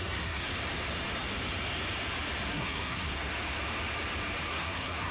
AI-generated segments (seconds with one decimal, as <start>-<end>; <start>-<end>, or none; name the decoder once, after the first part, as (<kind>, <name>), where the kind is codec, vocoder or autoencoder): 0.0-0.5 (codec, SNAC); 2.5-3.3; 4.5-5.1